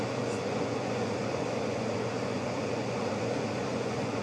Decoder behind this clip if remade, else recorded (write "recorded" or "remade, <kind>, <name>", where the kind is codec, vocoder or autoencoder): remade, vocoder, Vocos